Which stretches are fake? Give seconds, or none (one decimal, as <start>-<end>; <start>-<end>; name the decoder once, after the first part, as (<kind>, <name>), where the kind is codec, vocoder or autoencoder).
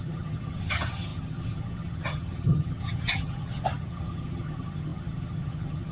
0.0-5.9 (vocoder, HiFi-GAN)